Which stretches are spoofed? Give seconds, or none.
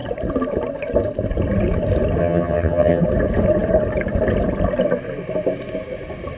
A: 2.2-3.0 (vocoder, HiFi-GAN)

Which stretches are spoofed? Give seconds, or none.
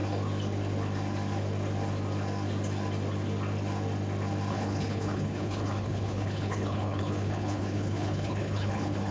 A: 4.5-9.1 (codec, HILCodec)